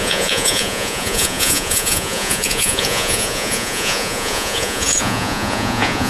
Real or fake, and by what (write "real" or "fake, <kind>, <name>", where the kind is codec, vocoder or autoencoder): fake, vocoder, Vocos